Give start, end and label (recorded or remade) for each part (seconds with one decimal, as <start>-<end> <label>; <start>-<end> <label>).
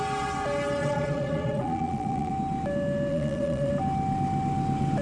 0.0-0.8 recorded; 0.8-2.3 remade; 2.3-3.1 recorded; 3.1-3.7 remade; 3.7-5.0 recorded